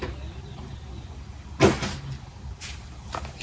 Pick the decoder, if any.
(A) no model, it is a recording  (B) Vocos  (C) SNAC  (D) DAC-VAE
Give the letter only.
A